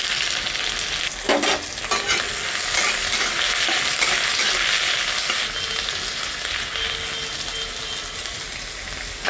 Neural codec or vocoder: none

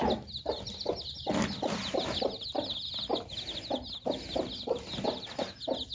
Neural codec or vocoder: none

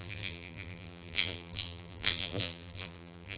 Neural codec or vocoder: vocoder, BigVGAN v2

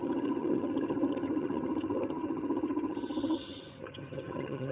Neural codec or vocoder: vocoder, HiFi-GAN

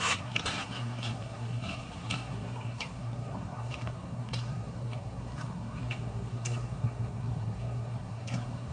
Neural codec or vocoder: codec, SNAC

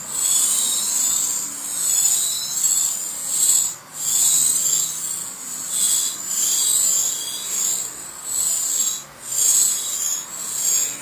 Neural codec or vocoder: none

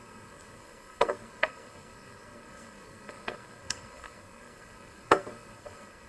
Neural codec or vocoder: codec, SNAC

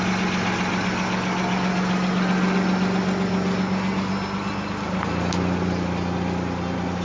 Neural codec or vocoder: none